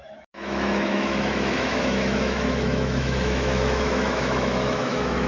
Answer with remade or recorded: remade